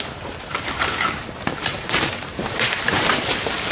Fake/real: fake